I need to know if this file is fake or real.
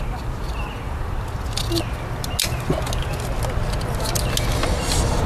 real